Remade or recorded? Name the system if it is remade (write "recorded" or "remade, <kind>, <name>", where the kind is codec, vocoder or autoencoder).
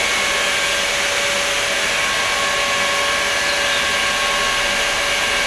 recorded